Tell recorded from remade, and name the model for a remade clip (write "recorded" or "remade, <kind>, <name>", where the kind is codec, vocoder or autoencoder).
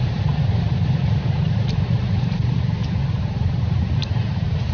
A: remade, vocoder, BigVGAN v2